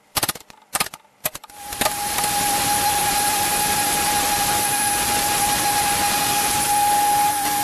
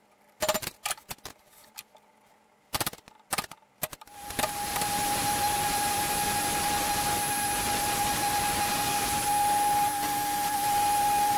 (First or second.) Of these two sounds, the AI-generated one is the first